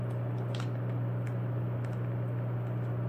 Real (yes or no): yes